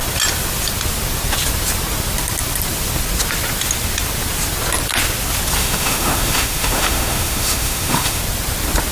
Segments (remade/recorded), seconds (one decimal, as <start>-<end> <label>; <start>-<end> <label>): 0.0-5.6 recorded; 5.6-8.2 remade; 8.2-8.9 recorded